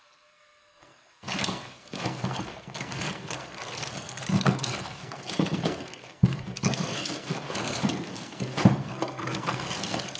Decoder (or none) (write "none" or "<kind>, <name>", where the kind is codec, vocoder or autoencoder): codec, SNAC